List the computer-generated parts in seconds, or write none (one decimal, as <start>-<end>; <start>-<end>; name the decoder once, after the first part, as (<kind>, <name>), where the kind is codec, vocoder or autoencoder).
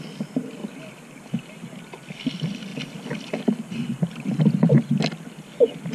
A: none